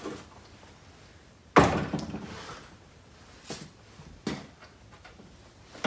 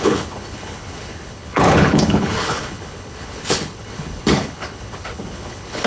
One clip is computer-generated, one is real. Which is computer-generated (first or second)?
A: second